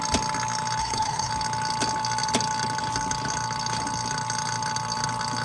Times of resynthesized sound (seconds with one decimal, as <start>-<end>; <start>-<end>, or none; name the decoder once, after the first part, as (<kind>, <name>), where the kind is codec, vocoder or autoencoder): 0.8-1.3 (codec, SNAC)